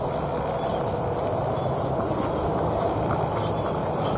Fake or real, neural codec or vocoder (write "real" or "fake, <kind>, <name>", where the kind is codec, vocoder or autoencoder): real